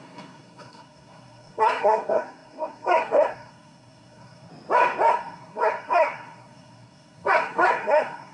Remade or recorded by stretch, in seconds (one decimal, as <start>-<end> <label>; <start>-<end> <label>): 0.0-4.5 remade; 4.5-5.1 recorded; 5.1-8.3 remade